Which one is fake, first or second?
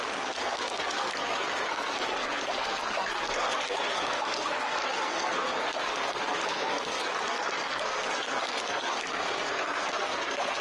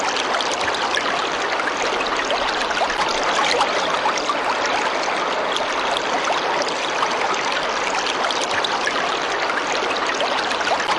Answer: first